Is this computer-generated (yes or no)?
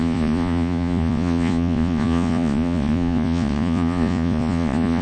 yes